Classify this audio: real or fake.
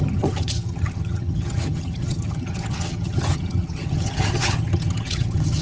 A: fake